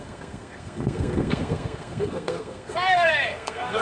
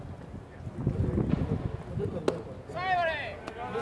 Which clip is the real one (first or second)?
second